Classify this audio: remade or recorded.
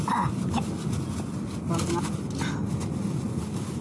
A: recorded